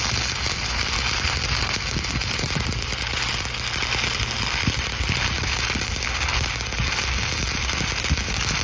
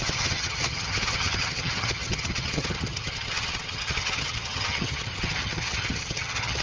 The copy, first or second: second